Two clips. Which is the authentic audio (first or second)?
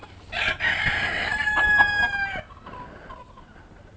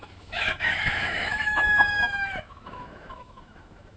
first